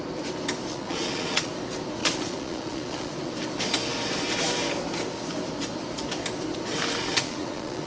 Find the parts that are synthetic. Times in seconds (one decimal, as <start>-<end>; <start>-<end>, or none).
0.7-1.5; 2.0-3.3; 7.0-7.9